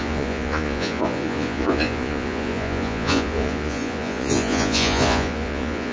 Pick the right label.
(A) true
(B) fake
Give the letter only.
B